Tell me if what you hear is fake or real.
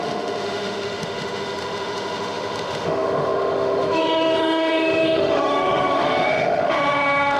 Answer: fake